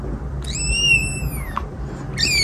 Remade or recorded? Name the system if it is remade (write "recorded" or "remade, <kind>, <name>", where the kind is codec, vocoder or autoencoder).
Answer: recorded